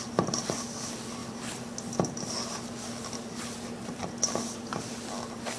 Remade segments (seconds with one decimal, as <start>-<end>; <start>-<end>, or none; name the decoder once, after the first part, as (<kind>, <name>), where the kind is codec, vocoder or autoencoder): none